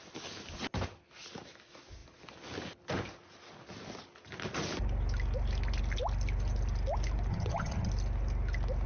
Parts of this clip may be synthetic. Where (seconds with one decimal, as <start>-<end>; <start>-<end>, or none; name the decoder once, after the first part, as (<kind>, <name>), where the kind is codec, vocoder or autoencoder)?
7.3-7.9 (vocoder, HiFi-GAN)